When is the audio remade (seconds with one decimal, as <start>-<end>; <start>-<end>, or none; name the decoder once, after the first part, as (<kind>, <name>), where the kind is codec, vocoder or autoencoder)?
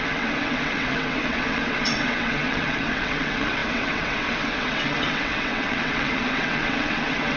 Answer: 0.0-7.4 (vocoder, WaveNeXt)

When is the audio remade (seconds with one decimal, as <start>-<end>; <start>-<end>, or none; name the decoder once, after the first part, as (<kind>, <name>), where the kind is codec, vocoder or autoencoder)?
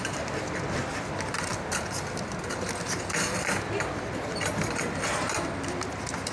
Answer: none